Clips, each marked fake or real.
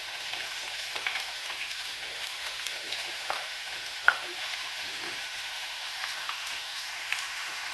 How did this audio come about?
fake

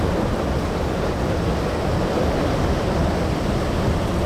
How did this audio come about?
real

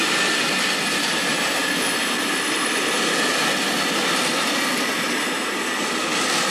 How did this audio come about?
real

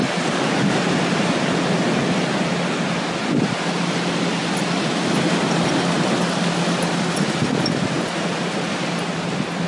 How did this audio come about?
real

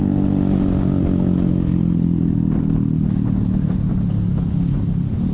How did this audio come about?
real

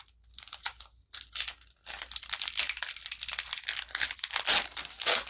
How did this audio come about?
real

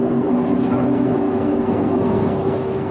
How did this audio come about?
fake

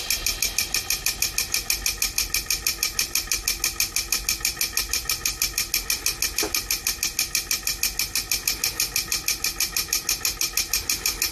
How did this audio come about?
real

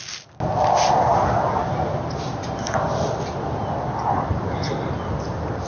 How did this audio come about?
real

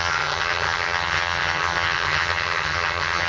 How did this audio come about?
fake